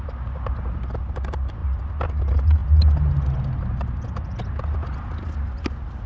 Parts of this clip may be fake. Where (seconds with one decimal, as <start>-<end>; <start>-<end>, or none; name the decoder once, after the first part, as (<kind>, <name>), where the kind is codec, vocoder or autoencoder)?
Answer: none